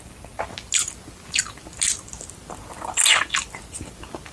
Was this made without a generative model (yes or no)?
yes